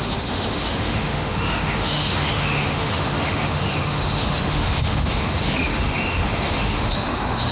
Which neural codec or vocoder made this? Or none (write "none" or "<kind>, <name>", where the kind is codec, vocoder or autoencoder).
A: autoencoder, DAC-VAE